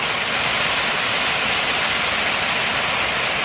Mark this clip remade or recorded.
recorded